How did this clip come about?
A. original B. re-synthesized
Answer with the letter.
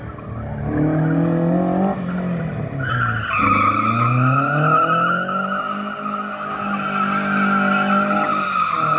A